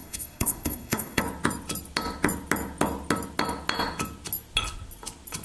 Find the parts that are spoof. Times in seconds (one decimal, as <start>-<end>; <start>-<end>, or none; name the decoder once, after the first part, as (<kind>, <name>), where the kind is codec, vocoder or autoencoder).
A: 0.0-1.2 (codec, SNAC)